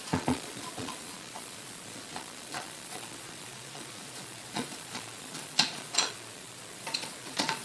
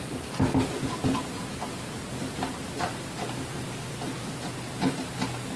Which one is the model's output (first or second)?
first